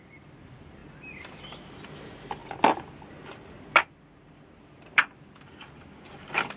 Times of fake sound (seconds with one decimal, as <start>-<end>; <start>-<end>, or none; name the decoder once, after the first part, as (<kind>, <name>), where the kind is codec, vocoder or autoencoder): 0.8-1.5 (vocoder, BigVGAN v2); 2.4-5.2